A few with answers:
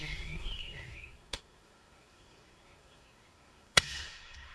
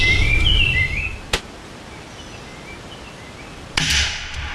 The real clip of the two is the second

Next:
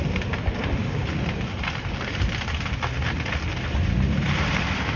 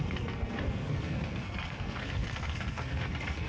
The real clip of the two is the first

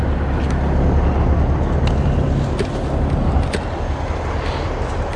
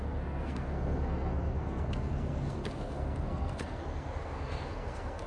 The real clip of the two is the first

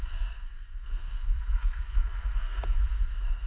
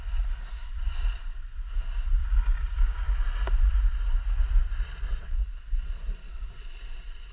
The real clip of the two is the second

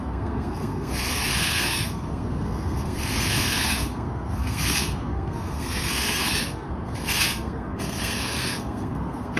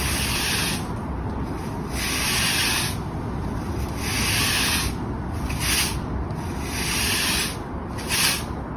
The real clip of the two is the second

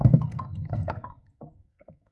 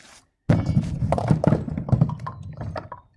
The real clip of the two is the second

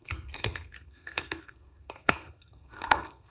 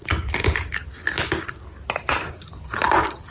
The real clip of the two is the second